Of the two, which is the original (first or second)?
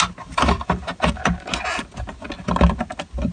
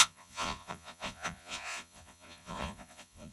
first